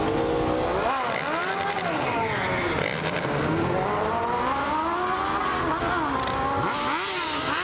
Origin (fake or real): real